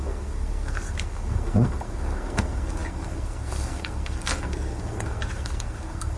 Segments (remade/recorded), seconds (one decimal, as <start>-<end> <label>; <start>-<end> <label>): 0.0-6.2 remade